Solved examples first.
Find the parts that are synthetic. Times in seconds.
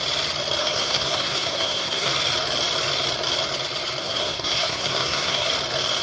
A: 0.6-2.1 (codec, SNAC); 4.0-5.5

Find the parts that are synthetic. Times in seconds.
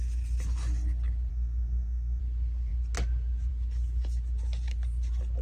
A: 1.3-2.2 (codec, SNAC)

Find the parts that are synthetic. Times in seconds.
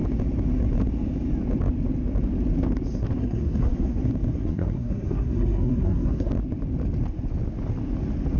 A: 3.2-4.0 (codec, SNAC); 4.4-6.3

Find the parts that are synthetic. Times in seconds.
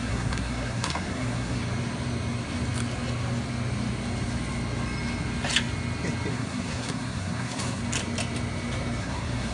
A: 0.0-1.6 (codec, SNAC); 6.3-7.8; 9.0-9.5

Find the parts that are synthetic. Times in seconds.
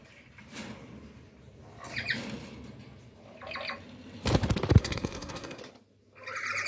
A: 4.8-5.6 (codec, SNAC)